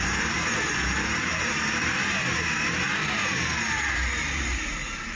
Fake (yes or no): yes